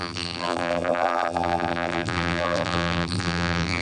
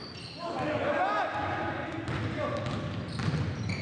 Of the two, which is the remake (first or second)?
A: first